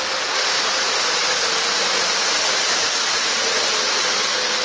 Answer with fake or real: real